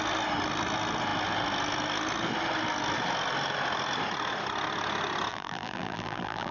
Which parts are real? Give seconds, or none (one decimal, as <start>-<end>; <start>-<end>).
0.0-5.3